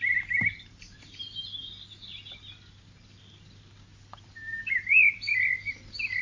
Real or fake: real